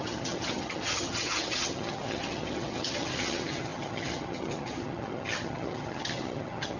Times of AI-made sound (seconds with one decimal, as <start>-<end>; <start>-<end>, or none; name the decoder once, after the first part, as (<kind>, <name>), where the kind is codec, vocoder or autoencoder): 0.0-6.8 (vocoder, HiFi-GAN)